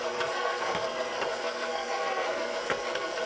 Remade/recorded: remade